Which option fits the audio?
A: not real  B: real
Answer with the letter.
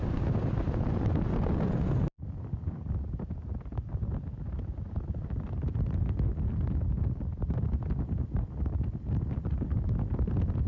B